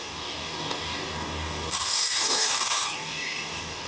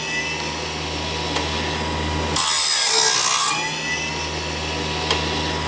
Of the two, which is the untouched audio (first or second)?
second